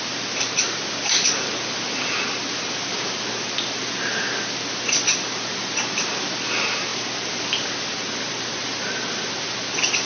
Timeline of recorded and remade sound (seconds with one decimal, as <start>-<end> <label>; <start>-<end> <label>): 0.0-10.1 recorded